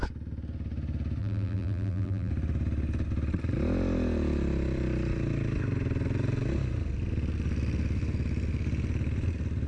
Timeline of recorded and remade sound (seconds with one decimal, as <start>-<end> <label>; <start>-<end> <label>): 0.0-1.2 recorded; 1.2-2.3 remade; 2.3-9.7 recorded